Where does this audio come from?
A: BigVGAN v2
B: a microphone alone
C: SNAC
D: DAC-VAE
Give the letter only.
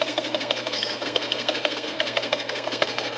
C